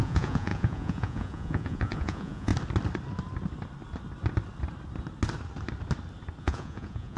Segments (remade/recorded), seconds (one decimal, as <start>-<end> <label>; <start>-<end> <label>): 0.0-2.5 remade; 2.5-6.4 recorded; 6.4-7.2 remade